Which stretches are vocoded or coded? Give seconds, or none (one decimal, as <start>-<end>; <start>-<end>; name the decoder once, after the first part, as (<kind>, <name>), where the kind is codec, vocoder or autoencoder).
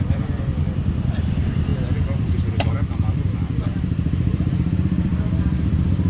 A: 0.0-6.1 (vocoder, BigVGAN v2)